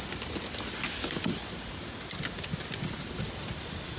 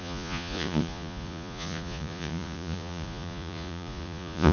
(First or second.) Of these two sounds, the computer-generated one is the second